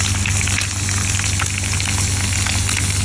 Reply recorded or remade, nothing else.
recorded